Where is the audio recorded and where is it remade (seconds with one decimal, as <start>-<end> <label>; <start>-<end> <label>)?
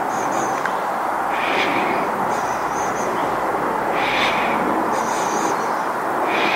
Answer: 0.0-6.6 recorded